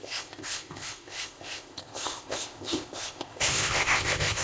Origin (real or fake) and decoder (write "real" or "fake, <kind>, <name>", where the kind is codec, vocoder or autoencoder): fake, codec, ZipCodec